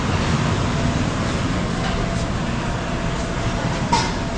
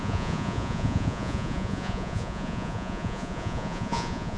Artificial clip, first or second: second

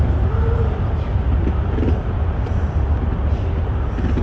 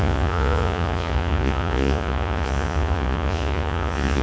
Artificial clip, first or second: second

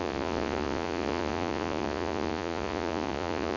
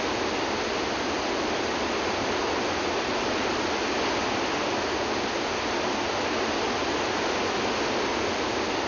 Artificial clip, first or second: first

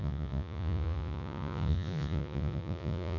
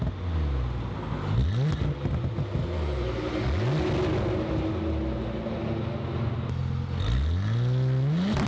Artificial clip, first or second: first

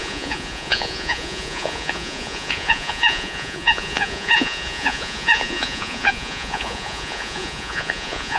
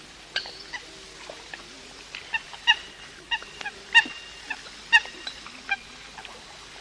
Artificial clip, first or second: first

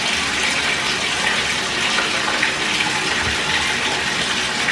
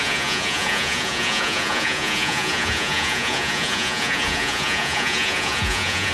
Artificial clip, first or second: second